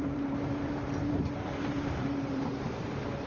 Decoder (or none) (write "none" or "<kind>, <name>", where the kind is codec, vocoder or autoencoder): vocoder, BigVGAN v2